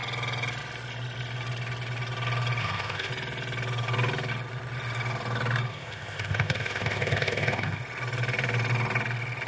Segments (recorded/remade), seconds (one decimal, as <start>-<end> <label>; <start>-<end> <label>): 0.0-2.6 recorded; 2.6-3.1 remade; 3.1-5.7 recorded; 5.7-7.8 remade; 7.8-9.5 recorded